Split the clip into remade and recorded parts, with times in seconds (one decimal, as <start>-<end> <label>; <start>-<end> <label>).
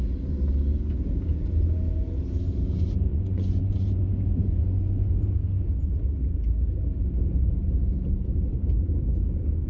0.0-3.1 recorded; 3.1-5.2 remade; 5.2-9.7 recorded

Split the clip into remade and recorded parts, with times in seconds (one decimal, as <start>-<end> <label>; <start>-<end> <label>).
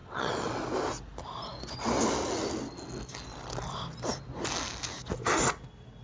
0.0-0.6 remade; 0.6-6.0 recorded